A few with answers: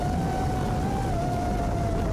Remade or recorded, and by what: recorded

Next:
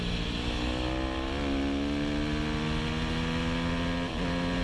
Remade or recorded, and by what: recorded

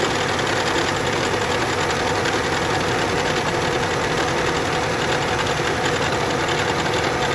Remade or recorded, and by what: recorded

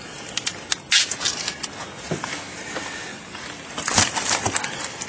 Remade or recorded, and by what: recorded